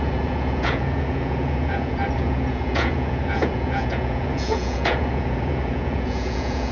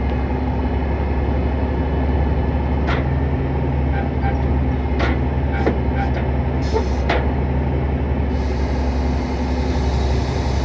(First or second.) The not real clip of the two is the first